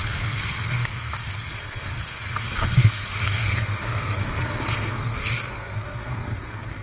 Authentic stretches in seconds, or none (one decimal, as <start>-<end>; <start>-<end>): none